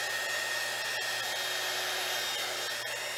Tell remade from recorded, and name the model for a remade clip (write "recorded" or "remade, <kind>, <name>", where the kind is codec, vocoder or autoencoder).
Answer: recorded